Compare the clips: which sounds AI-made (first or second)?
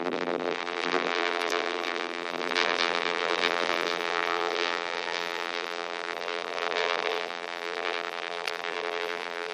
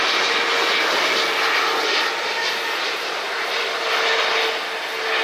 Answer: first